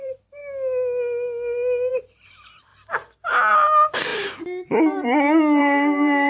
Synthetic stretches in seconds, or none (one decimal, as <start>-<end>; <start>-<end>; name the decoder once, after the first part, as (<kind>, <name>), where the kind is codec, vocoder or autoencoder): 0.0-0.4 (vocoder, BigVGAN v2); 1.9-2.7; 3.5-4.1; 5.6-6.3